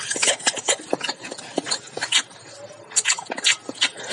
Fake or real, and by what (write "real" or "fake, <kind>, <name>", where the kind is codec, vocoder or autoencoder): real